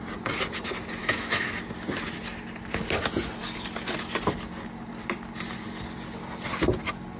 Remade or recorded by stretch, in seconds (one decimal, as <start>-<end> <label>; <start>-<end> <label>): 0.0-1.0 recorded; 1.0-1.6 remade; 1.6-7.2 recorded